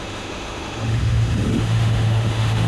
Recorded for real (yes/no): no